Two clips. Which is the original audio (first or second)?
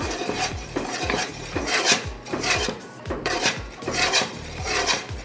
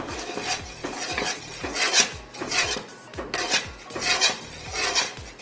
second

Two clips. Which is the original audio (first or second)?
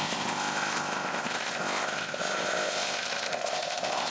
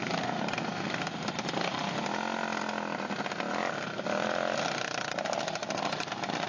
second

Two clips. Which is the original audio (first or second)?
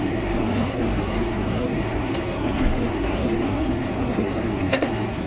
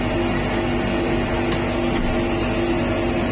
second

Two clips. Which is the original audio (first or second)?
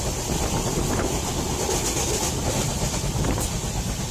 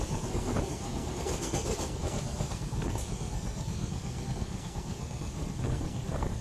first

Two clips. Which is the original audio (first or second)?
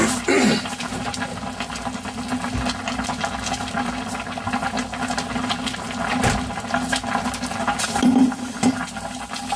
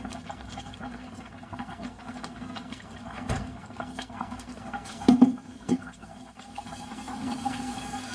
first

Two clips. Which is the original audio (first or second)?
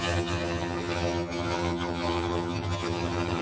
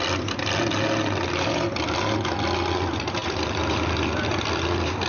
second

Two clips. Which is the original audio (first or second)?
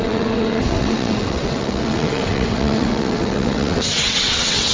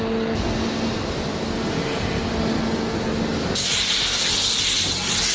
second